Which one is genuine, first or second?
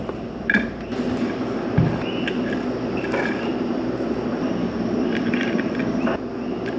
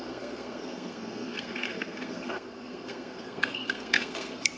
first